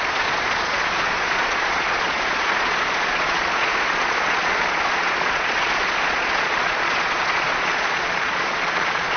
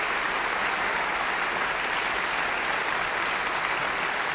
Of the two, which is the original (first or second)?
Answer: second